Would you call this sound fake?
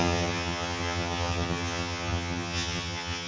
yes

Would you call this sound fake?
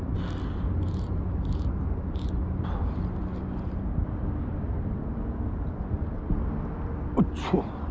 no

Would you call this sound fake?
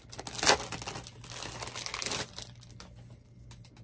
no